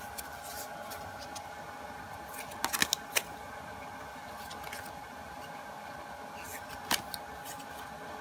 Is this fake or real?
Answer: real